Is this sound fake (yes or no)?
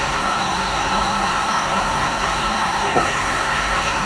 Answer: yes